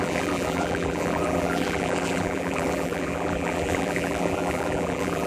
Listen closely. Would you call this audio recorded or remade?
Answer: remade